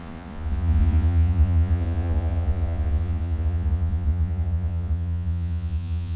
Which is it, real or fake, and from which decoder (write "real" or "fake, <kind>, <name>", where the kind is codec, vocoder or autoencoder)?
fake, vocoder, Vocos